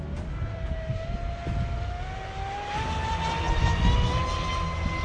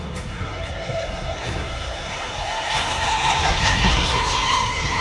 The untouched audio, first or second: first